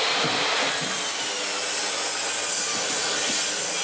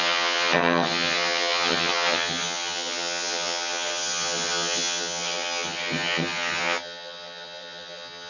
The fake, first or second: second